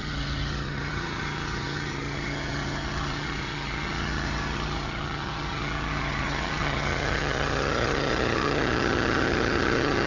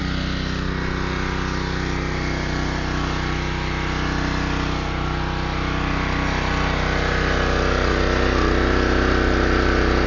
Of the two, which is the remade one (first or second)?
first